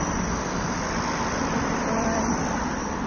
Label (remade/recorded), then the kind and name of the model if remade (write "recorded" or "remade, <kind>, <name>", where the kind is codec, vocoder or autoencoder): remade, vocoder, BigVGAN v2